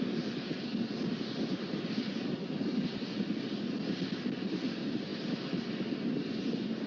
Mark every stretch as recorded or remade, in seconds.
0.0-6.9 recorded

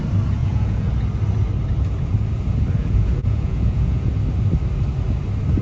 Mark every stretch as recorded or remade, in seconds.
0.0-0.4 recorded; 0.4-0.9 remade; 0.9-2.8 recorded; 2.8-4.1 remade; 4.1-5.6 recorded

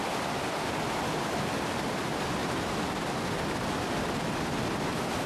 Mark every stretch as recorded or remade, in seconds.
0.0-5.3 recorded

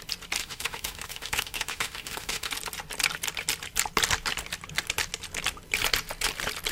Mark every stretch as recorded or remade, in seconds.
0.0-0.4 recorded; 0.4-2.5 remade; 2.5-6.7 recorded

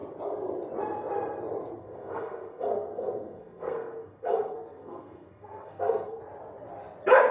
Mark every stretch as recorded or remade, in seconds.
0.0-1.8 recorded; 1.8-6.2 remade; 6.2-7.3 recorded

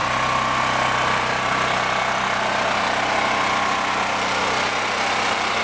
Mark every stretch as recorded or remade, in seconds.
0.0-5.6 recorded

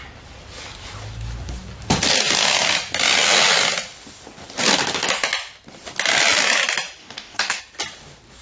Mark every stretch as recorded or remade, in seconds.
0.0-7.0 recorded; 7.0-7.6 remade; 7.6-8.4 recorded